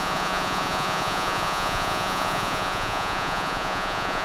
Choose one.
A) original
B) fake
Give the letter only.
B